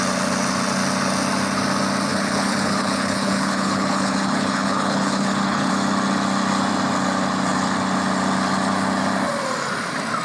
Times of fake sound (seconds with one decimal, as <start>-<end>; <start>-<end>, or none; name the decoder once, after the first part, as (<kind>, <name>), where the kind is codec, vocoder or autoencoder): 2.1-5.7 (codec, HILCodec)

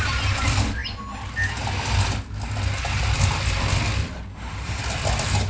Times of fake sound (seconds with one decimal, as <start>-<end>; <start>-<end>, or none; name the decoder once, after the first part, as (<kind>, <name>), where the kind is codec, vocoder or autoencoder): 4.3-4.8 (autoencoder, DAC-VAE)

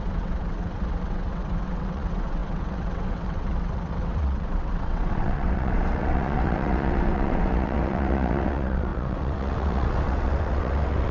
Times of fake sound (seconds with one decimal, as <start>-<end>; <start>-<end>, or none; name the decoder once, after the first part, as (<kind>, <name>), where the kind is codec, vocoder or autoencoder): 0.0-11.1 (vocoder, WaveNeXt)

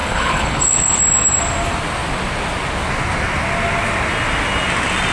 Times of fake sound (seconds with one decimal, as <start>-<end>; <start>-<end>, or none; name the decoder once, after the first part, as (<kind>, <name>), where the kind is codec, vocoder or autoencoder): 0.0-1.0 (codec, HILCodec)

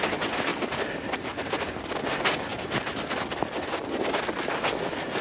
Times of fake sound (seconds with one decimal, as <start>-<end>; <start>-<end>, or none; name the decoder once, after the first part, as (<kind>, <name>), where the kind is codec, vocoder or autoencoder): none

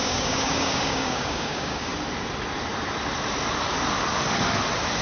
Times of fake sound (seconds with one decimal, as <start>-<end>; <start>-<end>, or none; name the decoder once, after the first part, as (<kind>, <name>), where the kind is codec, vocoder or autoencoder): 0.0-1.9 (codec, DAC)

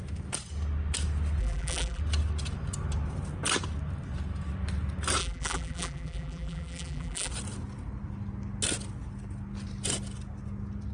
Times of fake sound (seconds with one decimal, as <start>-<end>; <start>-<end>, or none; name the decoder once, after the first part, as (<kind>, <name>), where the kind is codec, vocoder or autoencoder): 1.4-2.0 (vocoder, BigVGAN v2); 5.2-7.3

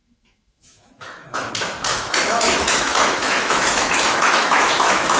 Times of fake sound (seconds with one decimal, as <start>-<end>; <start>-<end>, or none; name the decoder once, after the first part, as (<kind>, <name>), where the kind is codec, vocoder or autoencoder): 0.0-1.5 (autoencoder, DAC-VAE); 1.9-5.2